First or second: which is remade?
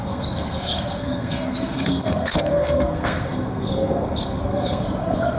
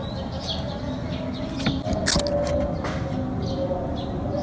first